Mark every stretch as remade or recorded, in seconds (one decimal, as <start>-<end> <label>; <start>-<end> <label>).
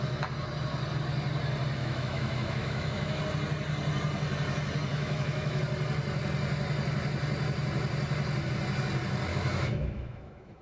0.0-1.8 recorded; 1.8-3.2 remade; 3.2-4.9 recorded; 4.9-5.6 remade; 5.6-9.3 recorded; 9.3-10.6 remade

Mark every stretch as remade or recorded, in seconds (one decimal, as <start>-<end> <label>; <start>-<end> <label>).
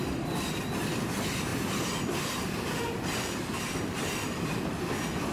0.0-5.3 recorded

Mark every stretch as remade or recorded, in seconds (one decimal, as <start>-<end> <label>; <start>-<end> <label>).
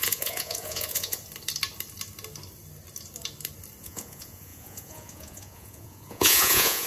0.0-1.2 remade; 1.2-3.8 recorded; 3.8-6.9 remade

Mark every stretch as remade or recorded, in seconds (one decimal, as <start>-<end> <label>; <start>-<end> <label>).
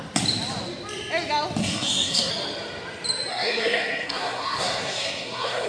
0.0-1.6 recorded; 1.6-2.3 remade; 2.3-3.3 recorded; 3.3-5.7 remade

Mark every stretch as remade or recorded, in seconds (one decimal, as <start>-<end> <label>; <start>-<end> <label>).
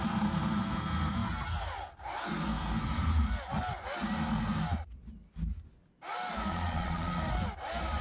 0.0-6.5 recorded; 6.5-7.2 remade; 7.2-8.0 recorded